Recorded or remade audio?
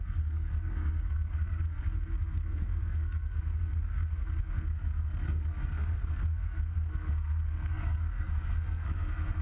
remade